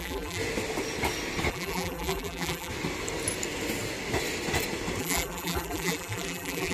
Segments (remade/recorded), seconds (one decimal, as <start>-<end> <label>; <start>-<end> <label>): 0.0-0.4 remade; 0.4-1.5 recorded; 1.5-2.7 remade; 2.7-5.0 recorded; 5.0-6.7 remade